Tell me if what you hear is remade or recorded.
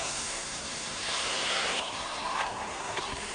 remade